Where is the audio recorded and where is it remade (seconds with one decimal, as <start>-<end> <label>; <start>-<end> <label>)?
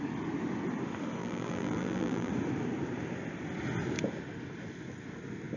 0.0-1.2 recorded; 1.2-2.3 remade; 2.3-5.6 recorded